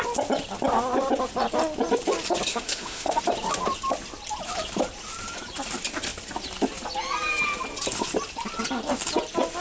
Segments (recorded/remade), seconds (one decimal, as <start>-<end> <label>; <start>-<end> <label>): 0.0-2.5 recorded; 2.5-3.2 remade; 3.2-9.6 recorded